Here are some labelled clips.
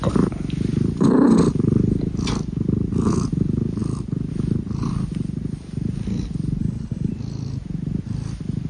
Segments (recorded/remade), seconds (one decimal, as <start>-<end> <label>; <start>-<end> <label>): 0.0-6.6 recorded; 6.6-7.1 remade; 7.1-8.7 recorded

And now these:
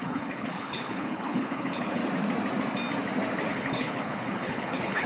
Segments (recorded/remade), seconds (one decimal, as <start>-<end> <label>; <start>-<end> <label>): 0.0-2.0 remade; 2.0-3.5 recorded; 3.5-5.1 remade

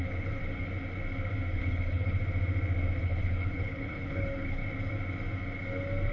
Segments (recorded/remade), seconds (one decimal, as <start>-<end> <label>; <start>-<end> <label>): 0.0-0.4 remade; 0.4-1.6 recorded; 1.6-2.2 remade; 2.2-3.0 recorded; 3.0-4.6 remade; 4.6-6.1 recorded

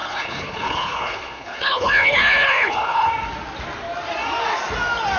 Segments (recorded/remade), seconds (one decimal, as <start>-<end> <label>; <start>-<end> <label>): 0.0-3.1 remade; 3.1-5.2 recorded

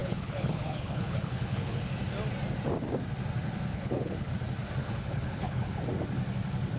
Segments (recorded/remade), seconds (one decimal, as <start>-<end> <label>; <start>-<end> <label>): 0.0-1.8 remade; 1.8-3.7 recorded; 3.7-4.3 remade; 4.3-4.8 recorded; 4.8-5.8 remade; 5.8-6.8 recorded